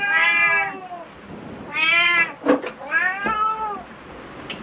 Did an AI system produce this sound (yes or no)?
no